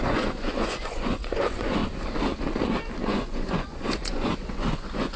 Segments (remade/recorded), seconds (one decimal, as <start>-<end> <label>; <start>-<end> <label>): 0.0-1.8 remade; 1.8-3.0 recorded; 3.0-5.2 remade